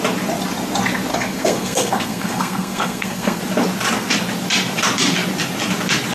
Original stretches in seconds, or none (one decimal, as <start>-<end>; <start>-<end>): 0.0-1.1; 3.4-6.1